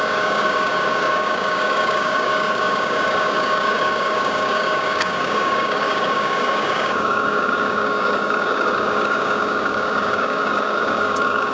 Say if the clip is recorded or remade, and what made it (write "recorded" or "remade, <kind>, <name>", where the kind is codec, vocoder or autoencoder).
remade, codec, DAC